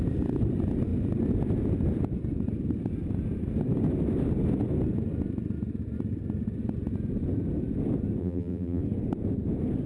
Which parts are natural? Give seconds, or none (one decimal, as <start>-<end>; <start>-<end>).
0.0-8.2; 8.8-9.9